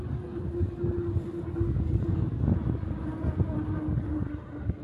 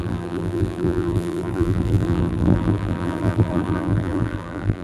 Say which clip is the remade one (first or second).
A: second